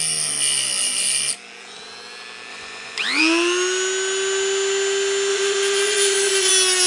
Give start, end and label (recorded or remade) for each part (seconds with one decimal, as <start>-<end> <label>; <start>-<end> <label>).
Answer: 0.0-2.5 recorded; 2.5-3.2 remade; 3.2-5.3 recorded; 5.3-6.5 remade; 6.5-6.9 recorded